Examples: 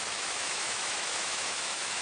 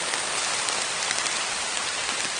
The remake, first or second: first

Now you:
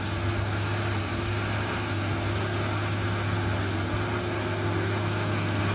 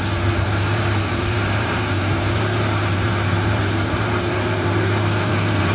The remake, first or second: second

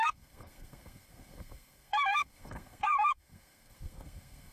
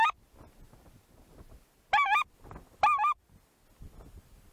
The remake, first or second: first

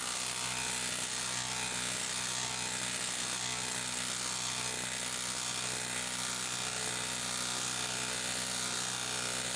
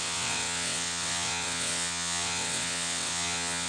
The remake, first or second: second